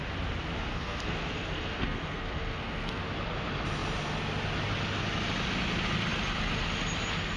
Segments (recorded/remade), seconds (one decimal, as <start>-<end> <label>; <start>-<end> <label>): 0.0-0.7 recorded; 0.7-3.0 remade; 3.0-7.4 recorded